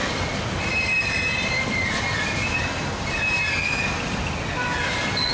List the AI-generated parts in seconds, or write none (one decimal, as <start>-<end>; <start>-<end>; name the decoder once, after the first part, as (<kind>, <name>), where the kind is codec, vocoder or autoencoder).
0.0-3.2 (vocoder, BigVGAN v2)